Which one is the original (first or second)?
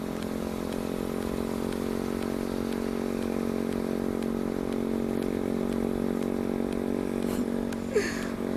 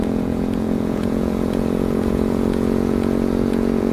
first